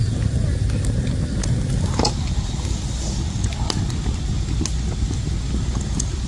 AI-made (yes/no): no